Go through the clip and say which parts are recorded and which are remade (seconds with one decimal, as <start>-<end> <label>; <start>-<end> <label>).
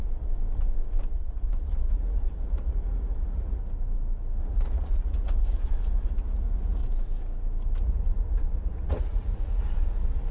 0.0-1.1 recorded; 1.1-3.6 remade; 3.6-4.4 recorded; 4.4-6.8 remade; 6.8-7.8 recorded; 7.8-10.3 remade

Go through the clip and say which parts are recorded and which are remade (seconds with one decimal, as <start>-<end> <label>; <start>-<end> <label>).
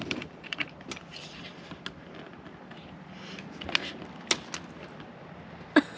0.0-0.7 remade; 0.7-6.0 recorded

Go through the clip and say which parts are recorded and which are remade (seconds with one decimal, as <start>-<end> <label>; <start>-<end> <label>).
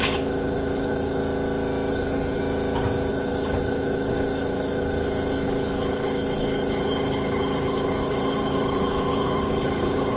0.0-1.2 remade; 1.2-1.9 recorded; 1.9-2.4 remade; 2.4-3.1 recorded; 3.1-10.2 remade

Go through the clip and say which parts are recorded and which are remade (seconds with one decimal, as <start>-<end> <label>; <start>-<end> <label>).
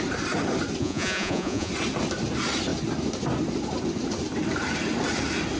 0.0-0.8 recorded; 0.8-1.7 remade; 1.7-5.6 recorded